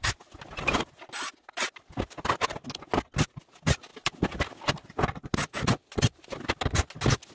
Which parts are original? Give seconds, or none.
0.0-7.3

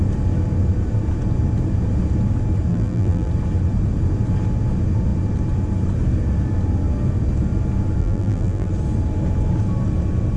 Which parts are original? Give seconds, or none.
0.0-2.7; 3.3-8.0; 8.7-10.4

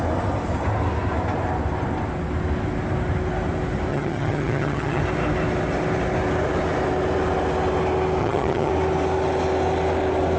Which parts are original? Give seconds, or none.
0.0-3.9; 5.0-8.2; 8.7-10.4

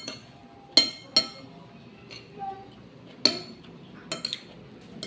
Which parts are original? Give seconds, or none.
0.4-3.5; 4.0-5.1